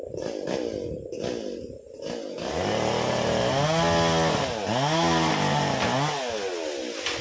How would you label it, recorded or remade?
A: recorded